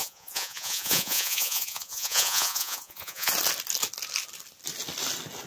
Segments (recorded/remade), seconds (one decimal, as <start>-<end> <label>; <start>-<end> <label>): 0.0-3.3 remade; 3.3-5.5 recorded